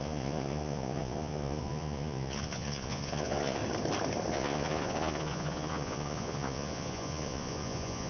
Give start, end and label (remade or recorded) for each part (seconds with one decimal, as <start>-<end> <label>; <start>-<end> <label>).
0.0-3.6 remade; 3.6-4.3 recorded; 4.3-8.1 remade